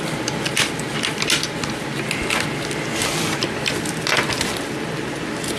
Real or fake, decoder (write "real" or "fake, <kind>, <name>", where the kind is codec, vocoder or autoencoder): real